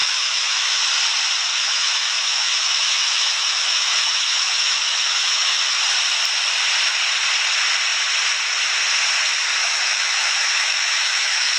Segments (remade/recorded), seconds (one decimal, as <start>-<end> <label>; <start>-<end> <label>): 0.0-0.8 remade; 0.8-1.5 recorded; 1.5-5.8 remade; 5.8-9.6 recorded; 9.6-11.6 remade